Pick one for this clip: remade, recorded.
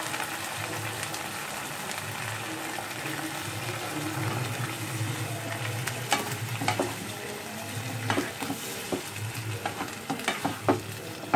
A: recorded